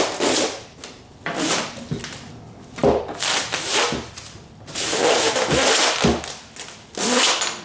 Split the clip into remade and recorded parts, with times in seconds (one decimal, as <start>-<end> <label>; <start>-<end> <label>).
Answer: 0.0-7.6 recorded